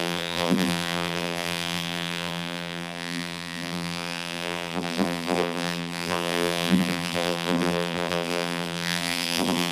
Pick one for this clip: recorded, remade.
remade